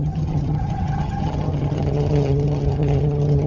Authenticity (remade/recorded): remade